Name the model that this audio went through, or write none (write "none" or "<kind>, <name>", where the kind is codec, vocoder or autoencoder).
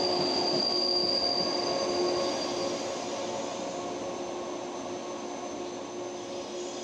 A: none